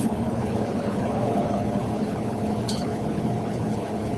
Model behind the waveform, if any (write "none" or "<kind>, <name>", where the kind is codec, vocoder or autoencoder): codec, HILCodec